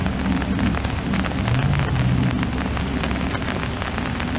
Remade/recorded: recorded